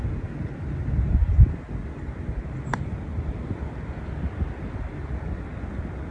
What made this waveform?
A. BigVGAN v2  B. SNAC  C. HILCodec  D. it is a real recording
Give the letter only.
D